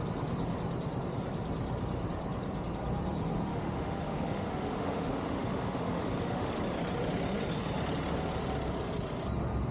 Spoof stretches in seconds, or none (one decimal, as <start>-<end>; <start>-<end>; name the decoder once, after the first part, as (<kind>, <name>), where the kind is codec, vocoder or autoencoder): 3.5-6.5 (autoencoder, DAC-VAE)